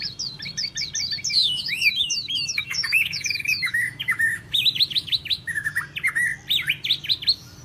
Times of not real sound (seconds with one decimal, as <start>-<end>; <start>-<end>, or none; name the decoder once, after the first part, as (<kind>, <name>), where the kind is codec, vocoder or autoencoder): 1.4-5.8 (autoencoder, DAC-VAE)